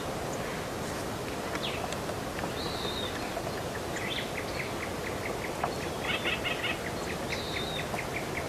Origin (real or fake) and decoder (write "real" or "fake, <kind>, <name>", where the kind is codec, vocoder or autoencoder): real